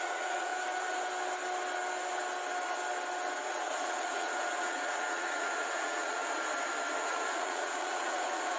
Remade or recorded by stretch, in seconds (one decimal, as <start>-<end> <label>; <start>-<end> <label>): 0.0-0.5 remade; 0.5-3.5 recorded; 3.5-6.2 remade; 6.2-7.0 recorded; 7.0-8.6 remade